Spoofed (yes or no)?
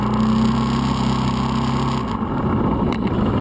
no